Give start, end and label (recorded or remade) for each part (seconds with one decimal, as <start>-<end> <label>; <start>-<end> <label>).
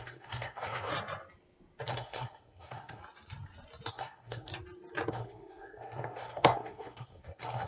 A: 0.0-0.9 remade; 0.9-1.9 recorded; 1.9-3.0 remade; 3.0-3.9 recorded; 3.9-4.5 remade; 4.5-5.1 recorded; 5.1-7.7 remade